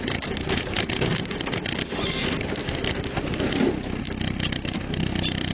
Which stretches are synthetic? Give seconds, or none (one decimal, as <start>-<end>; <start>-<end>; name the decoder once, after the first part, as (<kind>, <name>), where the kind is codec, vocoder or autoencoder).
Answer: none